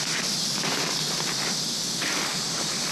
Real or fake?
real